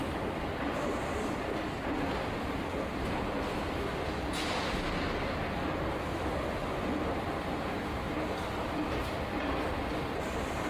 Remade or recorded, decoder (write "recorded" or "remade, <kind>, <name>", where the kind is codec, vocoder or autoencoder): recorded